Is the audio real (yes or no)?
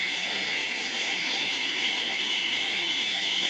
no